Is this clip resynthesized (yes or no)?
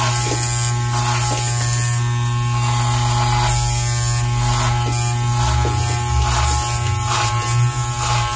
no